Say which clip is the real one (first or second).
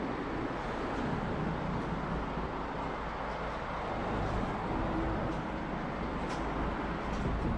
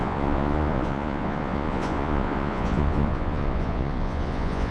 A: first